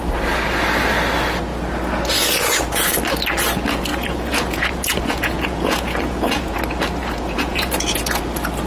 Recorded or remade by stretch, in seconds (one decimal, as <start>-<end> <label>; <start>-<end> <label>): 0.0-3.9 recorded; 3.9-6.6 remade; 6.6-7.0 recorded; 7.0-8.2 remade; 8.2-8.7 recorded